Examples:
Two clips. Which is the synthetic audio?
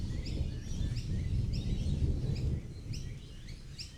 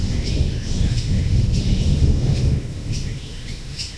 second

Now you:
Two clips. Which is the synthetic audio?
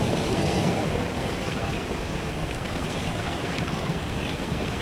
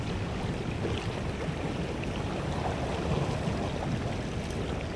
first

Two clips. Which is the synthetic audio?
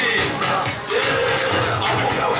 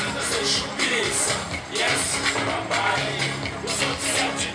first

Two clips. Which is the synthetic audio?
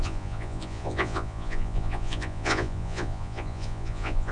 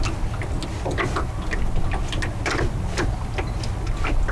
first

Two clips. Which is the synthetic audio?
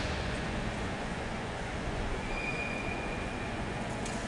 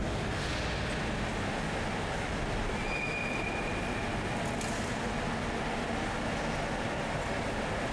first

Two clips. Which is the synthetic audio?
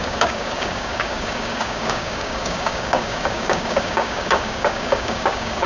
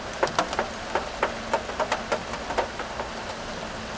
first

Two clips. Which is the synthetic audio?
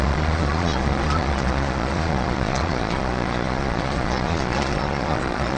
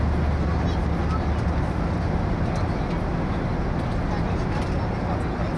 first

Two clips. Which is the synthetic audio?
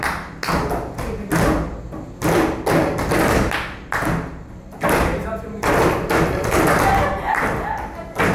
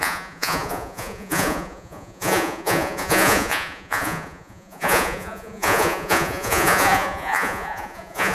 second